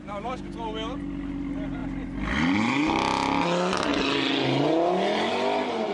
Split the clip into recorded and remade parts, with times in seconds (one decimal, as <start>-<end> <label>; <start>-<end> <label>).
0.0-5.9 recorded